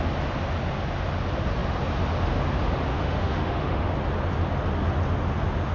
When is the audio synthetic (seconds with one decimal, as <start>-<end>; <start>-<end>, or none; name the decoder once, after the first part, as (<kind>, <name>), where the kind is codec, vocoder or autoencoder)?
2.9-3.9 (autoencoder, DAC-VAE)

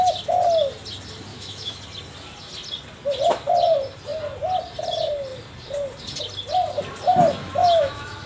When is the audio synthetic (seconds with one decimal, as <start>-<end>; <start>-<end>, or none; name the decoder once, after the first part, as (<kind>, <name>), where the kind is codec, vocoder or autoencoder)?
1.3-1.8 (autoencoder, DAC-VAE); 7.4-8.3

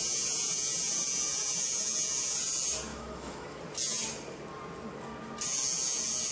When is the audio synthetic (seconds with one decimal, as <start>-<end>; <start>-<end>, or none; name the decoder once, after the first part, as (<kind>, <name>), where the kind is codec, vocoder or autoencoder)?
2.9-3.6 (autoencoder, DAC-VAE)